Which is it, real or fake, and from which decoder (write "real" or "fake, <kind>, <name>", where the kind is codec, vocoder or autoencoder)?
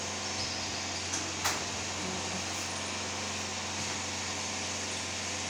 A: real